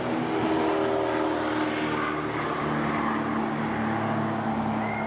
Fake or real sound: real